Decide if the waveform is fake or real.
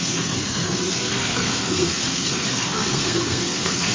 fake